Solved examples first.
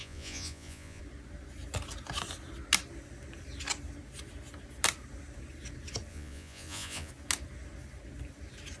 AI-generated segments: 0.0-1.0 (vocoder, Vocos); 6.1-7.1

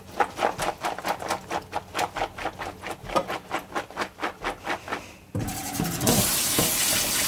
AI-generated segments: 5.6-6.7 (vocoder, BigVGAN v2)

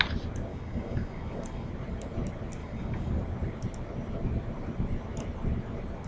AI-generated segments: 0.5-1.7 (codec, DAC); 2.6-3.1

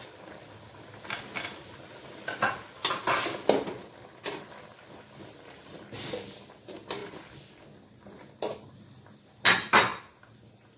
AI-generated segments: none

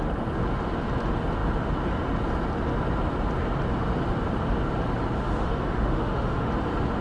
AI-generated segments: 5.2-6.5 (autoencoder, DAC-VAE)